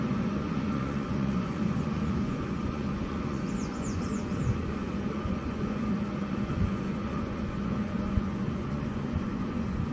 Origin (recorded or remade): remade